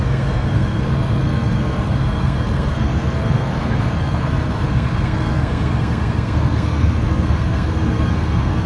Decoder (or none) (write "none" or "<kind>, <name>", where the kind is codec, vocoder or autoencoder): codec, SNAC